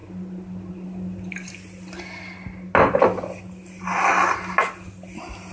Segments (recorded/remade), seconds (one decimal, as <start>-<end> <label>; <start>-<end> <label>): 0.0-5.5 recorded